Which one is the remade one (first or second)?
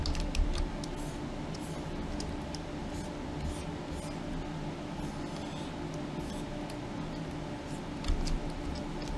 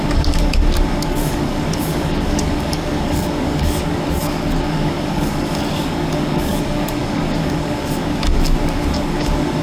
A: second